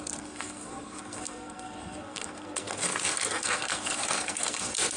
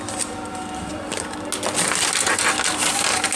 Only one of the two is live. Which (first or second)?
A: second